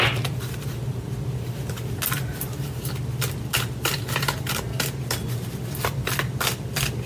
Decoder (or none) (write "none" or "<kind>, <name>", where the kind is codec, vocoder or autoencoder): none